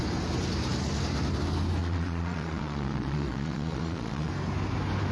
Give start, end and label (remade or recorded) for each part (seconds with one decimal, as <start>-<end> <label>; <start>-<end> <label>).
0.0-1.8 recorded; 1.8-4.3 remade; 4.3-5.1 recorded

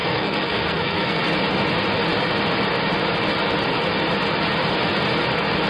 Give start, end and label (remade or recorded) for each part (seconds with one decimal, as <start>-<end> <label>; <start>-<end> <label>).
0.0-1.2 remade; 1.2-5.7 recorded

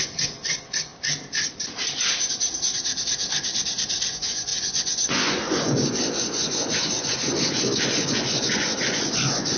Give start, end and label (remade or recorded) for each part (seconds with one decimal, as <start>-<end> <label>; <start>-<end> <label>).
0.0-0.9 remade; 0.9-4.1 recorded; 4.1-9.6 remade

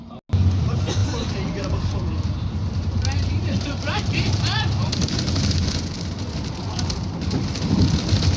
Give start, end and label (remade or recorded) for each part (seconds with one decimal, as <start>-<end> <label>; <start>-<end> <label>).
0.0-1.0 recorded; 1.0-4.9 remade; 4.9-8.4 recorded

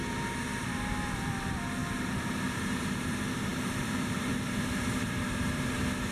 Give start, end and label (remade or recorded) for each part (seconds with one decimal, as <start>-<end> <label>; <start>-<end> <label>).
0.0-3.5 recorded; 3.5-5.4 remade; 5.4-6.1 recorded